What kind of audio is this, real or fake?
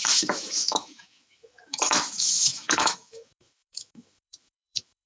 fake